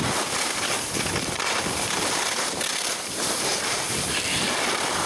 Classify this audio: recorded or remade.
recorded